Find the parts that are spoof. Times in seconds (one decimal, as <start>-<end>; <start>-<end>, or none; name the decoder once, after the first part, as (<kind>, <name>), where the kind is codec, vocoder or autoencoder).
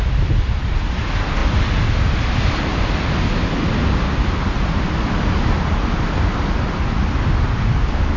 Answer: none